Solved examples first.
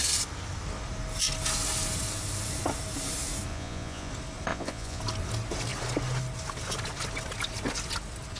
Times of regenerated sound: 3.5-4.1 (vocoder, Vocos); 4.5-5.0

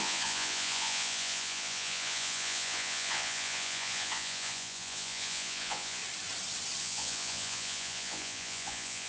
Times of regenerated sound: 0.0-6.0 (vocoder, Vocos); 6.8-9.1

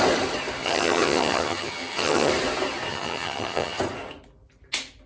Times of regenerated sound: 0.6-2.3 (vocoder, HiFi-GAN); 2.9-3.8

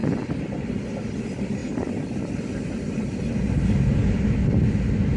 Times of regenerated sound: none

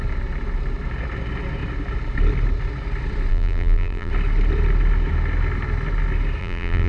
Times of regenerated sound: 3.3-4.1 (vocoder, BigVGAN v2); 6.4-6.9

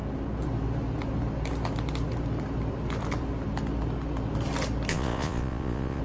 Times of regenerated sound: 4.9-6.0 (vocoder, Vocos)

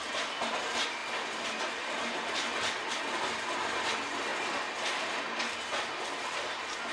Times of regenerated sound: none

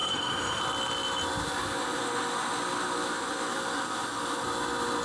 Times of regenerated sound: 0.0-0.6 (codec, SNAC)